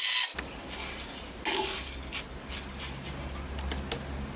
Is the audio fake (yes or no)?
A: no